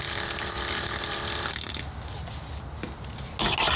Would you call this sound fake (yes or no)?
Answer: no